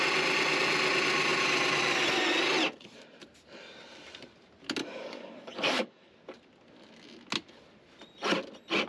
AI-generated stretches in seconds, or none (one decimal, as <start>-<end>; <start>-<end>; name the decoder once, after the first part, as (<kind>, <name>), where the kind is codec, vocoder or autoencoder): 4.8-6.1 (codec, DAC)